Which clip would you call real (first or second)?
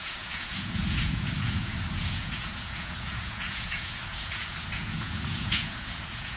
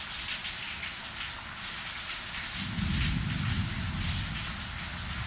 second